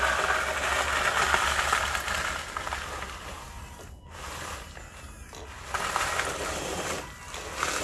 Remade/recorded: recorded